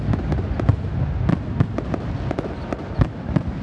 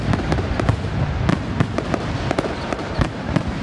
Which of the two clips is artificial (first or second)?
second